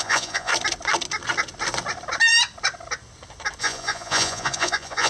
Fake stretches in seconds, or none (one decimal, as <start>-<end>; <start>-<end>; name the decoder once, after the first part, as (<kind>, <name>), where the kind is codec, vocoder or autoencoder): 0.0-0.5 (vocoder, Vocos); 3.6-5.1